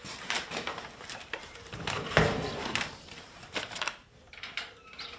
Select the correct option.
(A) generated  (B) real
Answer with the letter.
A